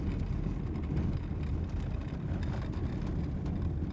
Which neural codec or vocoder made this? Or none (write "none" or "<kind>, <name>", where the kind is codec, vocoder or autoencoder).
none